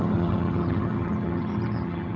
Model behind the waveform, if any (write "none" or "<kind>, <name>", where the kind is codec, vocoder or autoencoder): vocoder, HiFi-GAN